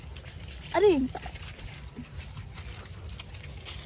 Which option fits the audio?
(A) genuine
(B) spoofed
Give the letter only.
A